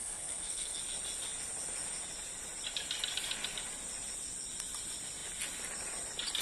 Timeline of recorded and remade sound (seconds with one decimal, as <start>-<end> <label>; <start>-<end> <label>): 0.0-0.8 remade; 0.8-6.4 recorded